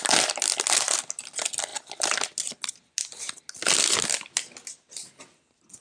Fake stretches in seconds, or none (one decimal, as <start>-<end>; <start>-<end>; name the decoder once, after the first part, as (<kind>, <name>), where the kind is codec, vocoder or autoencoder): none